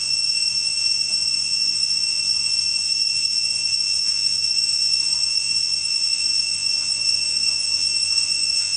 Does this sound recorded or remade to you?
remade